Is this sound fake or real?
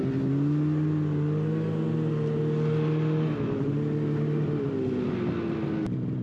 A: real